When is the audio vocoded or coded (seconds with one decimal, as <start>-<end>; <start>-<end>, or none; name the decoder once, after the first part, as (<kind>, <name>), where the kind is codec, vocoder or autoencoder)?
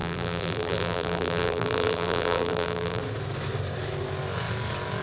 0.0-3.0 (vocoder, BigVGAN v2)